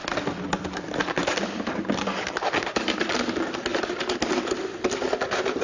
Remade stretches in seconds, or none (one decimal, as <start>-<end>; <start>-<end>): none